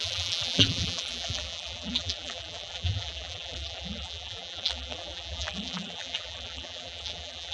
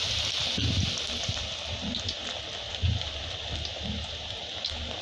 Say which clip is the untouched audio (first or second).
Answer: second